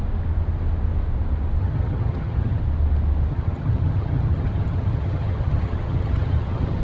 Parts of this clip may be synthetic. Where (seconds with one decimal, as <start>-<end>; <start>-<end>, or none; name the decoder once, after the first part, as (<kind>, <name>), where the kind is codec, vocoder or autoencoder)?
1.6-2.6 (vocoder, HiFi-GAN); 3.3-6.8

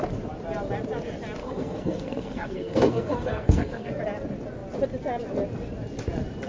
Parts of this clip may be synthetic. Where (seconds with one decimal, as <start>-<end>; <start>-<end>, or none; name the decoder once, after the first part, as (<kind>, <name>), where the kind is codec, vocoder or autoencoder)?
1.4-3.9 (codec, SNAC)

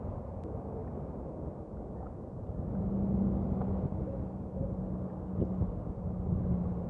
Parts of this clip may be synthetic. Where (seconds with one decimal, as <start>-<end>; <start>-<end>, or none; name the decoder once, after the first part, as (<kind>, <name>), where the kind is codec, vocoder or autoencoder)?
none

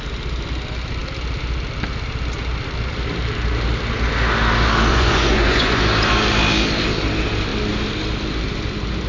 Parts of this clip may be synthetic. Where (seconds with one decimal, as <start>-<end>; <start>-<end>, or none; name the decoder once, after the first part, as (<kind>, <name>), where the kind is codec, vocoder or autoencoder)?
4.9-5.8 (vocoder, Vocos)

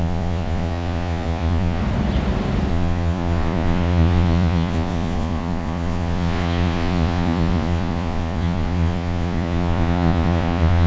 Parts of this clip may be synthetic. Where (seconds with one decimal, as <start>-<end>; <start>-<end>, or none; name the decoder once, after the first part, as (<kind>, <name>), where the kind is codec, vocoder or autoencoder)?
0.0-1.8 (vocoder, Vocos); 2.7-10.9

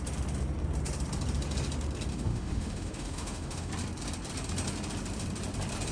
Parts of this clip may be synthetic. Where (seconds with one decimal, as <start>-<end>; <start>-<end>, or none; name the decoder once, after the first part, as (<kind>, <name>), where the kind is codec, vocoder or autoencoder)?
2.1-3.7 (autoencoder, DAC-VAE)

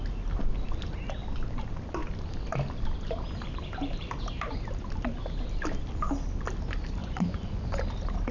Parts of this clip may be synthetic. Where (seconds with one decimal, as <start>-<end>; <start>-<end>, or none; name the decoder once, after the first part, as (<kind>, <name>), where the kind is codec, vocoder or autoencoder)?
7.0-7.8 (vocoder, Vocos)